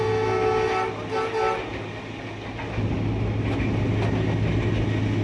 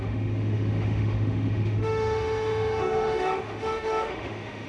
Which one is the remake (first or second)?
second